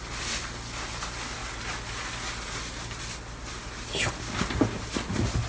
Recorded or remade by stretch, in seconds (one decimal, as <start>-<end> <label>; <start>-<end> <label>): 0.0-5.5 recorded